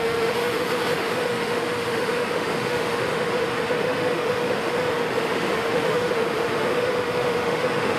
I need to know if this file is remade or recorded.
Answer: remade